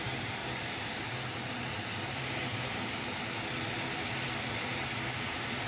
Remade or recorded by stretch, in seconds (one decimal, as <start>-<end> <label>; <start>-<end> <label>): 0.0-5.7 recorded